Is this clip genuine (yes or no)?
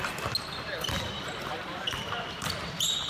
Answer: yes